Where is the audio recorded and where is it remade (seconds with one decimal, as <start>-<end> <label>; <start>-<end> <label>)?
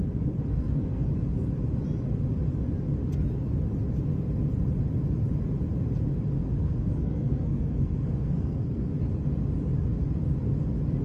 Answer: 0.0-0.5 recorded; 0.5-1.1 remade; 1.1-6.6 recorded; 6.6-8.9 remade; 8.9-11.0 recorded